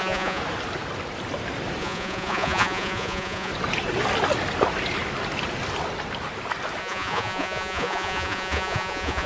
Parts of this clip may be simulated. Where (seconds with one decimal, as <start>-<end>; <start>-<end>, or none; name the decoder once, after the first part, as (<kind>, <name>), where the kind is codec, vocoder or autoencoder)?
0.0-0.4 (vocoder, Vocos); 1.8-3.5; 6.8-9.3